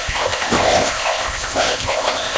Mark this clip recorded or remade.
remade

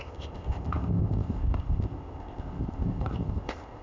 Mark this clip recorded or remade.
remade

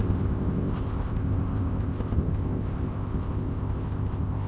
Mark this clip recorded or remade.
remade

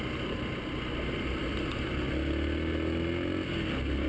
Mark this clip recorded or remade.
recorded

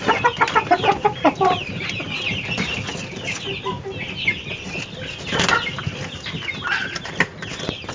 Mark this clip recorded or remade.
recorded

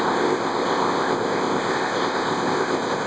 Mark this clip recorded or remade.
remade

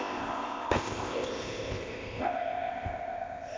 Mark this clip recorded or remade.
remade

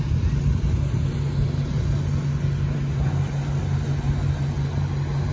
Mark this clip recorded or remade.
recorded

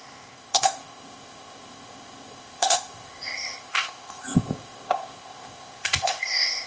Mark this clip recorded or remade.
remade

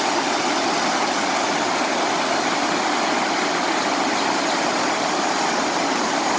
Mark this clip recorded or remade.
recorded